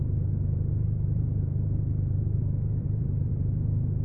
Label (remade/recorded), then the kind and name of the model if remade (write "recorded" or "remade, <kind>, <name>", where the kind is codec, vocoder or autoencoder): remade, vocoder, BigVGAN v2